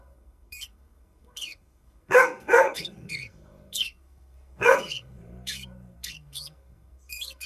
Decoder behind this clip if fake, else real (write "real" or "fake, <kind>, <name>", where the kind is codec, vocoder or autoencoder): fake, codec, SNAC